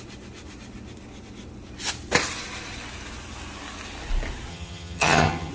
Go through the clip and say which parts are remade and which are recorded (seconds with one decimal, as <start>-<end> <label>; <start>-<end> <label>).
0.0-4.5 recorded; 4.5-5.5 remade